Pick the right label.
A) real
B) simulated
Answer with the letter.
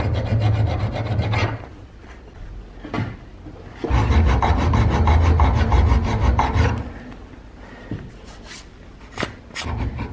A